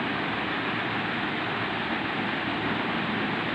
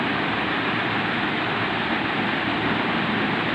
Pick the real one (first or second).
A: first